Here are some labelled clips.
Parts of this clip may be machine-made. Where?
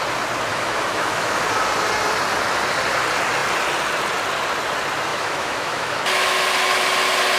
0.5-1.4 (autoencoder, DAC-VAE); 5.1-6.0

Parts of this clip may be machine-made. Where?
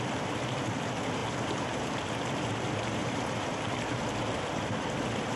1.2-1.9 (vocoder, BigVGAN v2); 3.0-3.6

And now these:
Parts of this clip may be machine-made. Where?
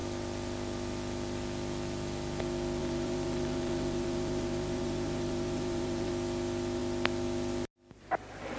2.8-6.1 (vocoder, BigVGAN v2)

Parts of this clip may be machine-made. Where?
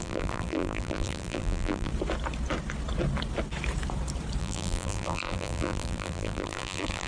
0.0-1.9 (vocoder, BigVGAN v2); 4.4-7.1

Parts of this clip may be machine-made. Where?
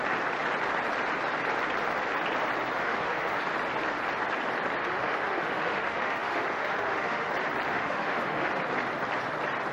2.8-3.4 (autoencoder, DAC-VAE); 4.8-7.3; 7.7-8.5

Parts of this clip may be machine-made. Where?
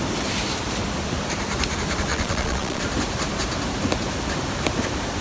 2.1-2.8 (vocoder, Vocos)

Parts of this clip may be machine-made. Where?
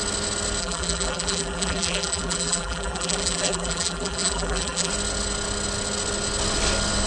0.6-4.9 (vocoder, BigVGAN v2)